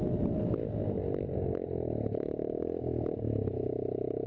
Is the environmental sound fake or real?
real